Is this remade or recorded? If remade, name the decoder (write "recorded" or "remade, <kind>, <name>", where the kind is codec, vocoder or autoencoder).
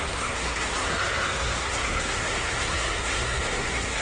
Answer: remade, codec, SNAC